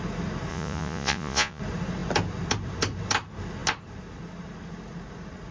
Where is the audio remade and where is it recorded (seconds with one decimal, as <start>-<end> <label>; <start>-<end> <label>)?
0.0-0.5 recorded; 0.5-1.6 remade; 1.6-5.5 recorded